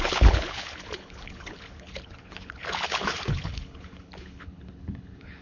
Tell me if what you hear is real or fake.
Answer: fake